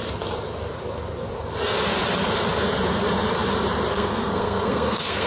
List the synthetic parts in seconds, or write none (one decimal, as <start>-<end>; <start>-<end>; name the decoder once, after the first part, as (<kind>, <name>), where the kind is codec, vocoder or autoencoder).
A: 3.9-5.3 (codec, SNAC)